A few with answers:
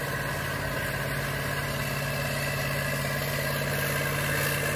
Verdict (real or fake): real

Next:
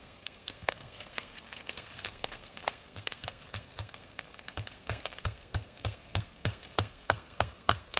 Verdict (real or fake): fake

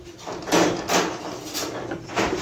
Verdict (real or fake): real